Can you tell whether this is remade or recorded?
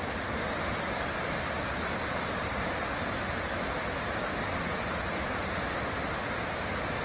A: recorded